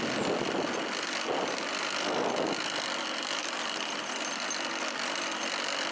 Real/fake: real